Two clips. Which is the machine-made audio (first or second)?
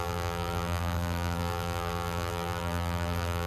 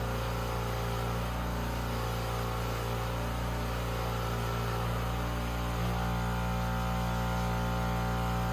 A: first